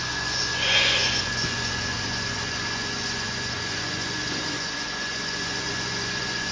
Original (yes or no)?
no